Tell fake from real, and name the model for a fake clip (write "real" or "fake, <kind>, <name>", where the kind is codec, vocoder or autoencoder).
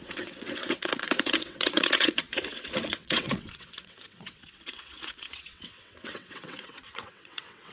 fake, vocoder, WaveNeXt